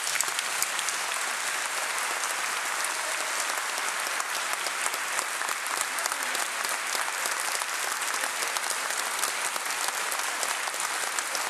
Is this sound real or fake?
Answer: real